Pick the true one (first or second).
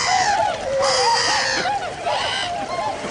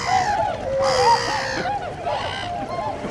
second